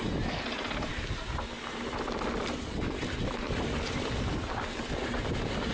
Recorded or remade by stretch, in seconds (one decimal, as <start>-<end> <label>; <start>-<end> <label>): 0.0-5.7 recorded